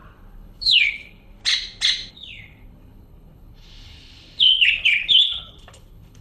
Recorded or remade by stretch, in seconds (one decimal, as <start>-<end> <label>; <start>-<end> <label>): 0.0-1.4 remade; 1.4-2.1 recorded; 2.1-6.2 remade

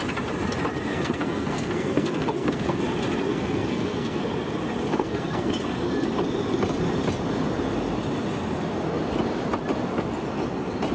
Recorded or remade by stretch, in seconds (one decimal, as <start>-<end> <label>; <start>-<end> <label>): 0.0-0.9 recorded; 0.9-2.8 remade; 2.8-3.3 recorded; 3.3-4.2 remade; 4.2-4.9 recorded; 4.9-5.5 remade; 5.5-10.9 recorded

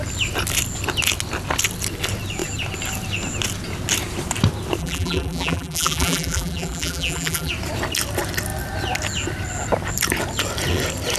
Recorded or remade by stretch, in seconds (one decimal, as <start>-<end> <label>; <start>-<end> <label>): 0.0-4.8 recorded; 4.8-7.5 remade; 7.5-11.2 recorded